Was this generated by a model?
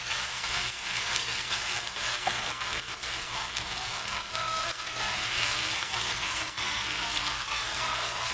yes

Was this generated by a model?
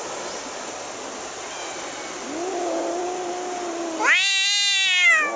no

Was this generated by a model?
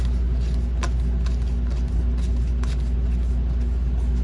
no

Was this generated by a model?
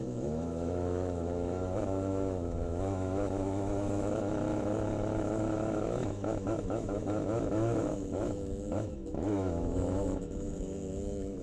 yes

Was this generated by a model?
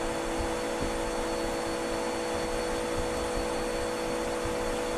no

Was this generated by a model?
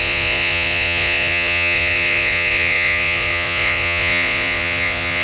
yes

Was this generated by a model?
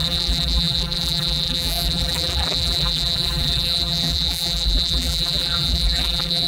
yes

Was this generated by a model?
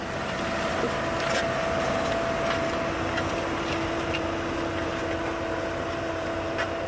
no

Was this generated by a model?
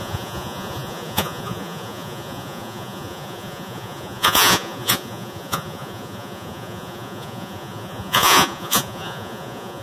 yes